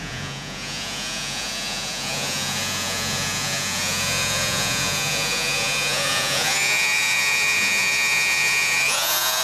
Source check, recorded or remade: remade